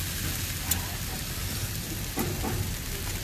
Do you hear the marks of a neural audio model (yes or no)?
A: no